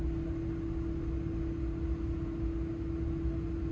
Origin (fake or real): real